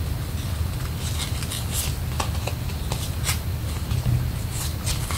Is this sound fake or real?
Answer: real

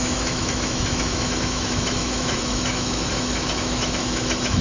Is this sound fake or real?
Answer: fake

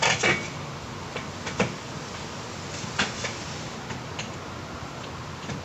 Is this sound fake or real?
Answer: real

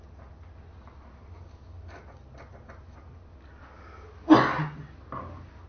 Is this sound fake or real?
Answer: real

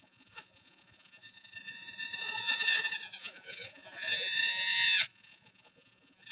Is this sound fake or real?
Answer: fake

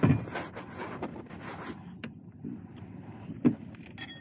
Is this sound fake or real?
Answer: real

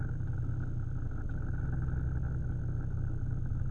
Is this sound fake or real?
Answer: real